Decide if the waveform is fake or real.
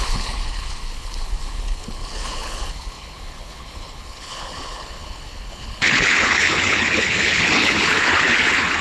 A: fake